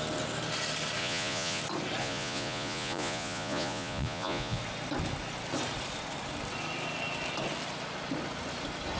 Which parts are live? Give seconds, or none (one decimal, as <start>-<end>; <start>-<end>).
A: 0.0-1.0; 1.6-2.0; 4.6-9.0